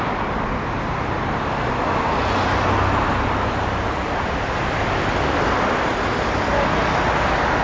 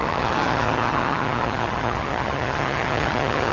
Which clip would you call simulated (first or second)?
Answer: second